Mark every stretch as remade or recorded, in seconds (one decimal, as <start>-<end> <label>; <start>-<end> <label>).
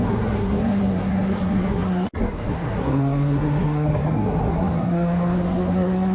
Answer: 0.0-6.1 remade